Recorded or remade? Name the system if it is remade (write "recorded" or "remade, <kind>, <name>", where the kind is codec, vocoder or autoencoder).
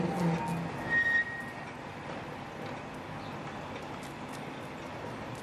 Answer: recorded